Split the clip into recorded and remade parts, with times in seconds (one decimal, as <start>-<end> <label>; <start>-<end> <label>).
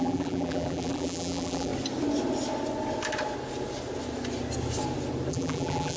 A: 0.0-1.7 remade; 1.7-5.3 recorded; 5.3-6.0 remade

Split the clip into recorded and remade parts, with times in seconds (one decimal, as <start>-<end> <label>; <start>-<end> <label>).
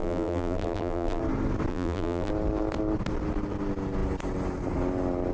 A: 0.0-1.2 remade; 1.2-1.7 recorded; 1.7-2.3 remade; 2.3-5.3 recorded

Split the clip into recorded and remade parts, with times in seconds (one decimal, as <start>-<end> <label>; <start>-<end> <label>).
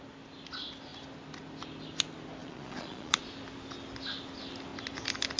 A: 0.0-2.4 recorded; 2.4-3.2 remade; 3.2-5.4 recorded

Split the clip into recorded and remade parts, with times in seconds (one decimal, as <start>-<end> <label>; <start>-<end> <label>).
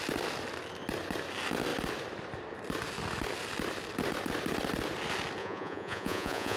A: 0.0-5.4 recorded; 5.4-6.6 remade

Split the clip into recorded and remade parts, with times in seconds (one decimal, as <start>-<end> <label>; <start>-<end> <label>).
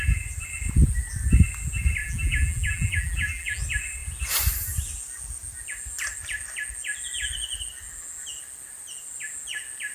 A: 0.0-2.0 recorded; 2.0-3.6 remade; 3.6-9.9 recorded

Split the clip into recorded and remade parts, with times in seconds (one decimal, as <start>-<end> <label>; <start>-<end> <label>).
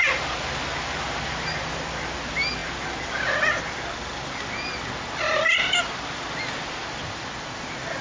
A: 0.0-8.0 recorded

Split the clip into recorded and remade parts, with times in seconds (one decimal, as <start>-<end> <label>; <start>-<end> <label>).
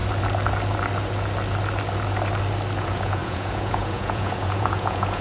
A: 0.0-2.8 recorded; 2.8-5.2 remade